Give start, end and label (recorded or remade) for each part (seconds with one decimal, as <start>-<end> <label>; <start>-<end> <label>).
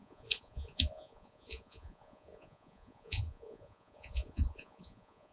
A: 0.0-5.3 remade